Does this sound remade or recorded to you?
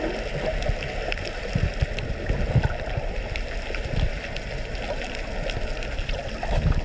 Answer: recorded